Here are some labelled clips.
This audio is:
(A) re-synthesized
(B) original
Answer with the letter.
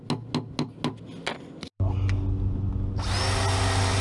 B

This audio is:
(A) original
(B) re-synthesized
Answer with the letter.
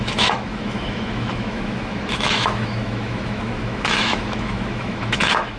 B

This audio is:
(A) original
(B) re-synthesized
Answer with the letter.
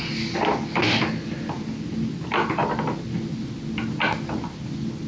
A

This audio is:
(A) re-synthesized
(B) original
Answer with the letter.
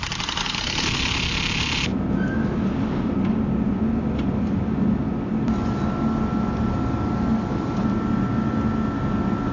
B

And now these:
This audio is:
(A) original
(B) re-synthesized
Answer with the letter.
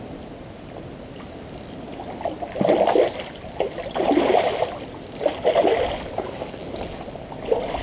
A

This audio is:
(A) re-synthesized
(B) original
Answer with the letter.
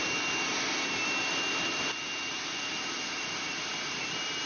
B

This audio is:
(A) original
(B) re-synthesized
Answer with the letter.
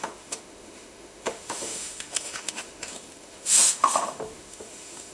B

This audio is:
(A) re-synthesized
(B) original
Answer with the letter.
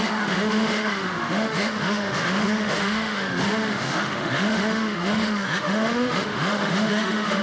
A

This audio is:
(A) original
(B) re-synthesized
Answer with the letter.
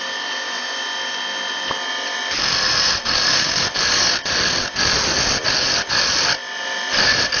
A